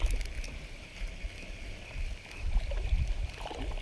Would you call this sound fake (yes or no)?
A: no